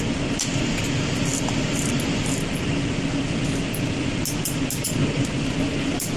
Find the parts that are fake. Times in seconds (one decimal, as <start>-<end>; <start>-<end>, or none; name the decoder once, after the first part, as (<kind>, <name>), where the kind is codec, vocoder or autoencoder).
none